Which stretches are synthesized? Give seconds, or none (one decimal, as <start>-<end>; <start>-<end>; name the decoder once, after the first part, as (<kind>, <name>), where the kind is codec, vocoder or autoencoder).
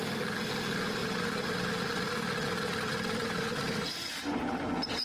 2.9-4.5 (vocoder, BigVGAN v2)